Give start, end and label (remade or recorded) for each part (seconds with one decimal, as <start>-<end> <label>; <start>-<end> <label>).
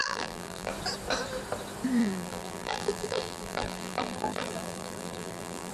0.0-0.7 remade; 0.7-2.0 recorded; 2.0-5.7 remade